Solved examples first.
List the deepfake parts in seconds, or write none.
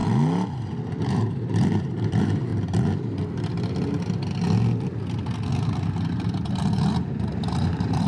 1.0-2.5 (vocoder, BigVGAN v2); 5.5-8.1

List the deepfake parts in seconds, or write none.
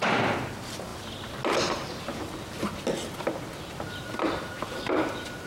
none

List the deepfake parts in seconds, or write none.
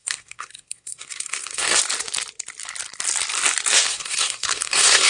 0.0-1.8 (codec, SNAC); 3.9-5.1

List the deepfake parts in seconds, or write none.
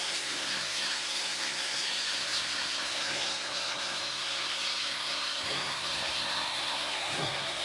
0.0-7.6 (codec, SNAC)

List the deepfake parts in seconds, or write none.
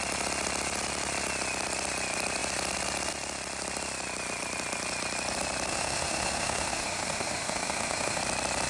5.7-8.2 (autoencoder, DAC-VAE)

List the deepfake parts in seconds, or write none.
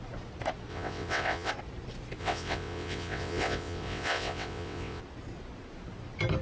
0.7-1.5 (vocoder, WaveNeXt); 2.2-5.0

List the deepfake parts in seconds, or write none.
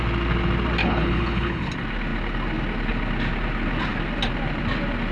0.8-1.7 (codec, HILCodec)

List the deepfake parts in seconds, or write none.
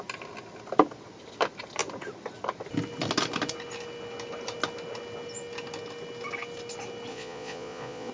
7.1-8.1 (vocoder, Vocos)